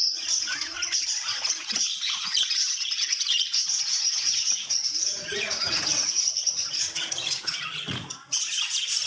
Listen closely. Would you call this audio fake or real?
fake